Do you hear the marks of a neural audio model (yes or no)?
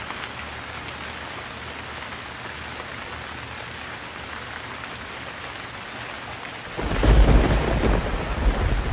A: no